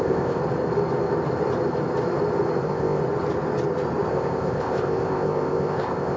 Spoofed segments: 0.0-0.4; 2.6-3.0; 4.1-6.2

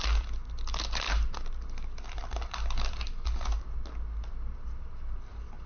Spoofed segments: none

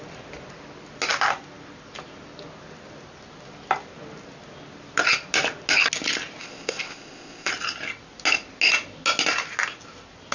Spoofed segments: 6.4-7.5

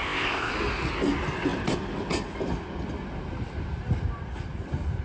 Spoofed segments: 0.0-0.5